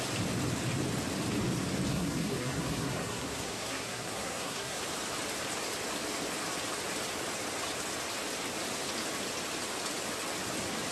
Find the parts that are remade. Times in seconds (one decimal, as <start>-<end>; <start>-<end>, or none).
1.9-4.8